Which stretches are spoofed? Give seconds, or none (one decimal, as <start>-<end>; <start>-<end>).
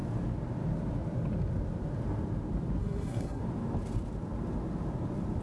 2.8-3.4